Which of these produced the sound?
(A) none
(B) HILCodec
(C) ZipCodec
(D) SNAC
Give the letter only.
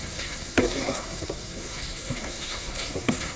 D